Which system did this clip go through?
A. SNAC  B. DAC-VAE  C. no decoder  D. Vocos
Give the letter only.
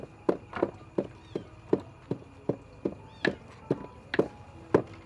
C